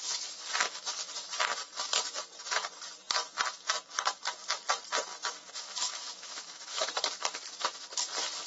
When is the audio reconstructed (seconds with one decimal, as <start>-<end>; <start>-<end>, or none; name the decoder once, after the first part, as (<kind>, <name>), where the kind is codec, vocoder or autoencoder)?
5.1-6.9 (autoencoder, DAC-VAE)